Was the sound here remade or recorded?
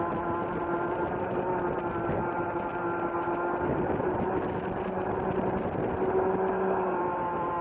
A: recorded